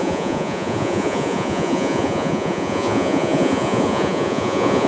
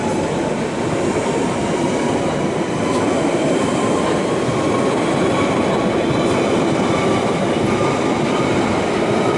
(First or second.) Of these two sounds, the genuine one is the second